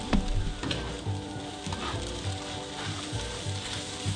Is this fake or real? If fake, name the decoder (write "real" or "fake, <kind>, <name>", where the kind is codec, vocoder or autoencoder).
fake, vocoder, BigVGAN v2